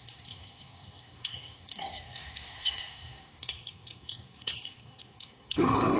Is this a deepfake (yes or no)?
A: yes